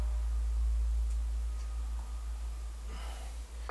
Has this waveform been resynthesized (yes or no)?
no